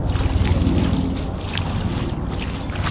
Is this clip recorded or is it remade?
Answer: recorded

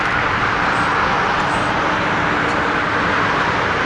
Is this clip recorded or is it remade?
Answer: recorded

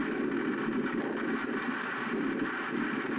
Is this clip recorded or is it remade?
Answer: recorded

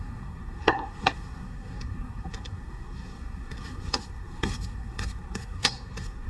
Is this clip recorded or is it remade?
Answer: remade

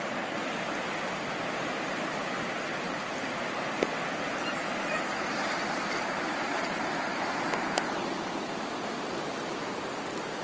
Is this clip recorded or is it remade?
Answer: recorded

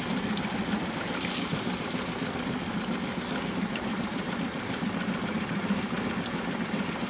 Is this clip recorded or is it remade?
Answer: recorded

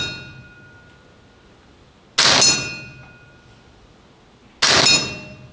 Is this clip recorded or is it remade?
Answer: recorded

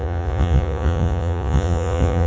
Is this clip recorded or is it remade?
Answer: remade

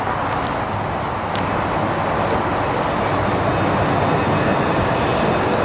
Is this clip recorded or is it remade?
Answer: recorded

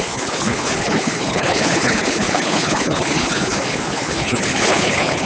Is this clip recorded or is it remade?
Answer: remade